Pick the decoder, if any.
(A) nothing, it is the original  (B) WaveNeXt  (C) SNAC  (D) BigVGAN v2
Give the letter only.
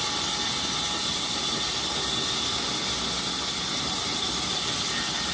A